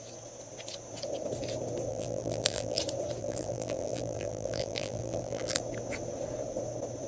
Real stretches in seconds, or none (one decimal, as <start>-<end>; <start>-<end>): 0.0-1.9; 2.8-3.2; 5.6-7.1